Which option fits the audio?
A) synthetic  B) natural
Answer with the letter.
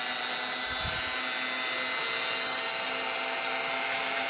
B